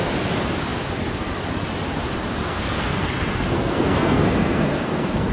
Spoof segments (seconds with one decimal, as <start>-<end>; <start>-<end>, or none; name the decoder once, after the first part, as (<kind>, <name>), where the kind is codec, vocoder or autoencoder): 2.4-5.3 (codec, SNAC)